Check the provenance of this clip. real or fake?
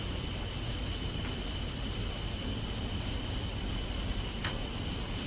real